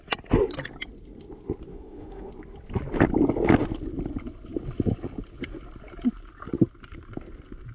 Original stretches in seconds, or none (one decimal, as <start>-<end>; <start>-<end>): 0.0-1.7; 2.3-7.7